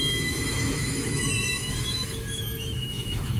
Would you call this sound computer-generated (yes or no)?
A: yes